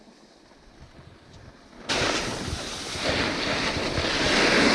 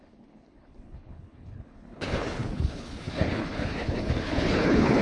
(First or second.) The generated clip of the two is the second